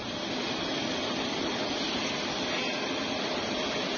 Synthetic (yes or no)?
no